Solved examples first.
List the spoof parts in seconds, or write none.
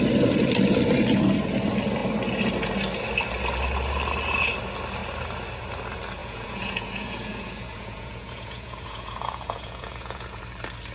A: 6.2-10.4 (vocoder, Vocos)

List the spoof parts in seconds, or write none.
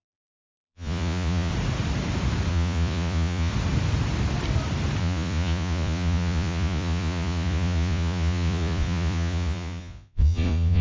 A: 0.0-1.5 (vocoder, Vocos); 2.5-3.5; 5.0-10.8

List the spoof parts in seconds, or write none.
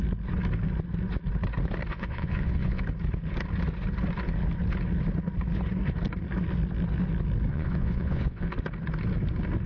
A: 1.9-2.8 (vocoder, Vocos); 7.5-8.5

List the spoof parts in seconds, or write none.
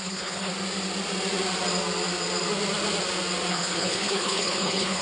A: 0.0-0.5 (codec, HILCodec); 3.5-5.0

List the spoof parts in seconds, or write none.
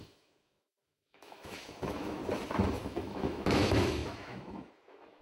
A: 0.0-2.2 (autoencoder, DAC-VAE); 2.8-5.2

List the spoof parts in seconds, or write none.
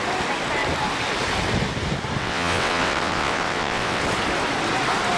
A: 2.2-4.0 (vocoder, WaveNeXt)